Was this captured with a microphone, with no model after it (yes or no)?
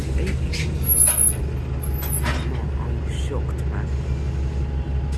yes